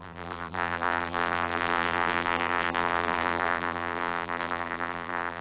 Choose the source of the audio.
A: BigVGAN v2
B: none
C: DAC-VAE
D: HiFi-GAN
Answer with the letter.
A